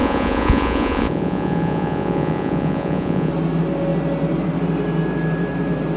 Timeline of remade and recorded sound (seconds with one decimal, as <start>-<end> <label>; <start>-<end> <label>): 0.0-3.3 remade; 3.3-6.0 recorded